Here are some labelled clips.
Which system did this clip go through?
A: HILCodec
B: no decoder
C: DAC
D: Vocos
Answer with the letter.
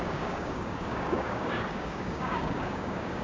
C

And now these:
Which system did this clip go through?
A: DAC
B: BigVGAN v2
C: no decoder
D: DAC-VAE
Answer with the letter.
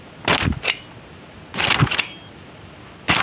C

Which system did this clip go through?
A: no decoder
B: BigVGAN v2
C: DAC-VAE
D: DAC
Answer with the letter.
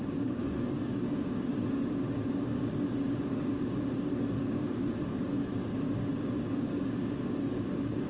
D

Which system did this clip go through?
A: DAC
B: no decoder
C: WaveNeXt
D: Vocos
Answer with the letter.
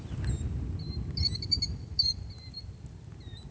B